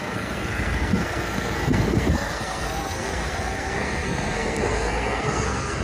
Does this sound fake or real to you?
fake